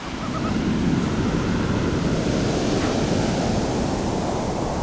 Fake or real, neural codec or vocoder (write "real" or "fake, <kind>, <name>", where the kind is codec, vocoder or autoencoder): real